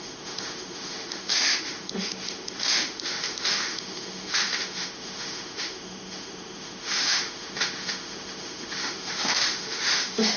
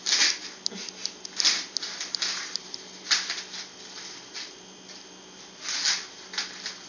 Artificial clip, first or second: first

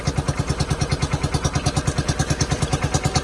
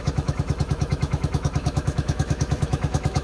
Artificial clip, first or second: second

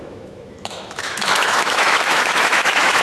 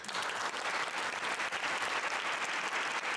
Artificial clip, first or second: first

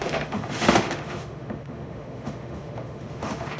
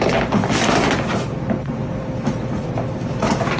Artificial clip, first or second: first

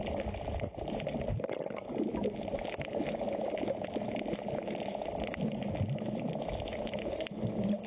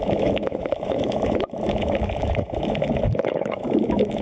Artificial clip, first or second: second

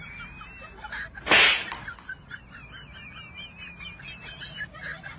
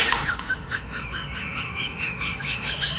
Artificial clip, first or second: second